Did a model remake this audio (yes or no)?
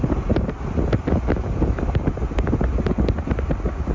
no